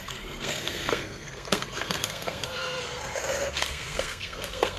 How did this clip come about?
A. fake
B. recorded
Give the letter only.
A